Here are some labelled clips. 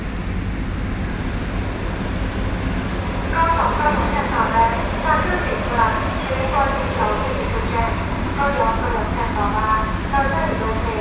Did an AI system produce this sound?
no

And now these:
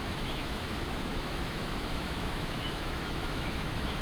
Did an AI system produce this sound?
yes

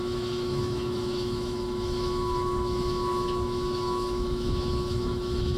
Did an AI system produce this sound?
yes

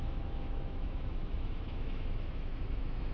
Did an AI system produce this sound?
yes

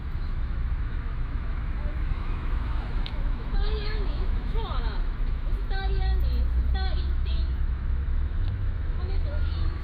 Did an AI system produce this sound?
yes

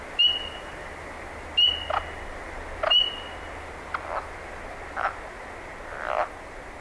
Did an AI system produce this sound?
no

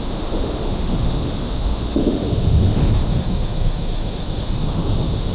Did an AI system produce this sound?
yes